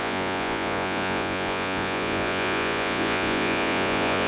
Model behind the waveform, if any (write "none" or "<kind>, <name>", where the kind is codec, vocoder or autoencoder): vocoder, Vocos